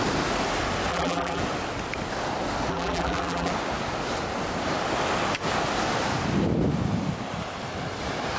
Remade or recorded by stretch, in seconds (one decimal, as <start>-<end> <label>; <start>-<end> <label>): 0.0-0.9 recorded; 0.9-1.4 remade; 1.4-2.7 recorded; 2.7-3.5 remade; 3.5-8.4 recorded